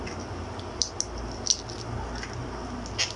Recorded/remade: recorded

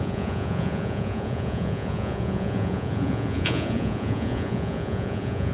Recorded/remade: remade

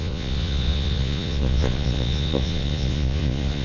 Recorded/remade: remade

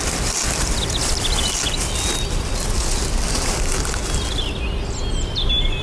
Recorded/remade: recorded